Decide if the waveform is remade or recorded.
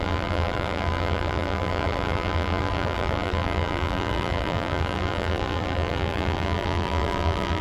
remade